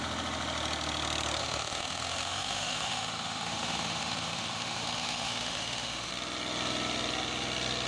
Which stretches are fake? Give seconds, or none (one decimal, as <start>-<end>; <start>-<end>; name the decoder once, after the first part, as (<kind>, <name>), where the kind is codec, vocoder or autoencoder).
1.4-6.1 (autoencoder, DAC-VAE)